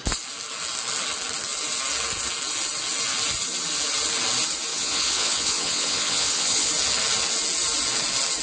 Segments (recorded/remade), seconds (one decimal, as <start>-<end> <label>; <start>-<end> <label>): 0.0-4.7 recorded; 4.7-6.7 remade; 6.7-8.4 recorded

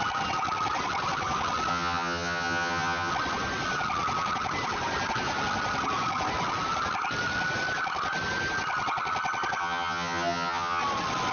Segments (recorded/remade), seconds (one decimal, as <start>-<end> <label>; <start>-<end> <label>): 0.0-1.7 recorded; 1.7-3.1 remade; 3.1-9.6 recorded; 9.6-10.8 remade; 10.8-11.3 recorded